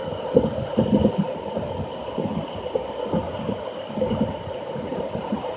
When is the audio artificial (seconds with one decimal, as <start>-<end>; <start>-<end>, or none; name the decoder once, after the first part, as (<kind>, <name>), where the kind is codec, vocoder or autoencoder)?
3.1-5.6 (vocoder, BigVGAN v2)